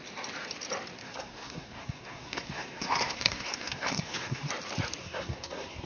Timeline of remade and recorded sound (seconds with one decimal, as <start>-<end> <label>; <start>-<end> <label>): 0.0-1.0 recorded; 1.0-4.5 remade; 4.5-5.0 recorded; 5.0-5.9 remade